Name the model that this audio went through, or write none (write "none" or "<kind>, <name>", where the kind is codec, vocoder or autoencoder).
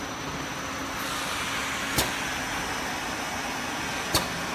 none